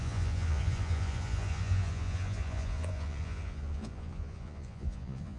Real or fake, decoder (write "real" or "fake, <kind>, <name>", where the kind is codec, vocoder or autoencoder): fake, vocoder, Vocos